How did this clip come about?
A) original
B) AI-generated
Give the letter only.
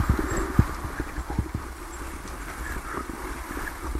A